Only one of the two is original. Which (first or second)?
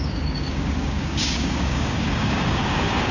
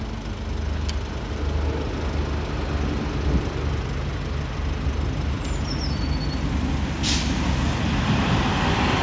second